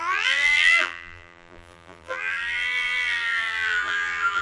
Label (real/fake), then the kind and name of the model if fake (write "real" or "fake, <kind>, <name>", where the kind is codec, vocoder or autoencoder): fake, vocoder, BigVGAN v2